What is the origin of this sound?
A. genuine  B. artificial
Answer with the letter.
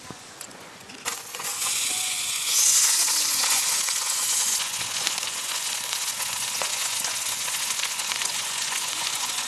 B